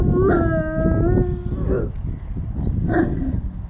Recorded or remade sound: recorded